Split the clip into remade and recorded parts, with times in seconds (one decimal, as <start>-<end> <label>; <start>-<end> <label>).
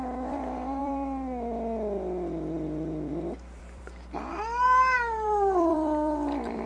0.0-6.7 remade